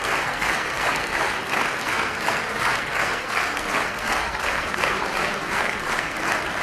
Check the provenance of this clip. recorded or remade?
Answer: remade